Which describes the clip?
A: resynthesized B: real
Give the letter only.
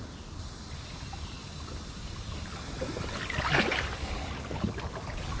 B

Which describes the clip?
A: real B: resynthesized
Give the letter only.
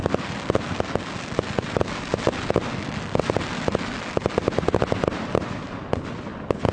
A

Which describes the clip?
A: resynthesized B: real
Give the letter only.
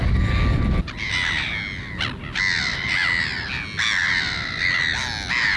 B